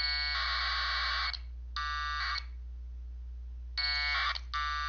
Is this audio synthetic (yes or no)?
no